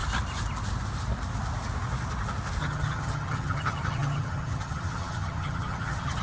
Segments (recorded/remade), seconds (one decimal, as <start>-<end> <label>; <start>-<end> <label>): 0.0-2.6 recorded; 2.6-6.2 remade